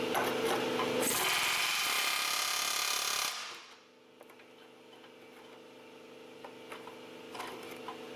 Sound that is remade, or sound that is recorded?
recorded